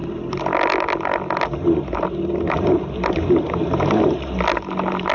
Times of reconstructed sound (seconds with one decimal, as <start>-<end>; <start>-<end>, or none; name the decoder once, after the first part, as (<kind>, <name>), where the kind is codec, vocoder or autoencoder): none